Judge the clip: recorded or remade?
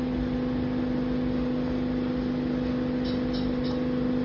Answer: recorded